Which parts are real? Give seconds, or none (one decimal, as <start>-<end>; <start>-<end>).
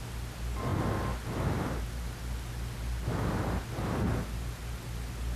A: 0.0-5.4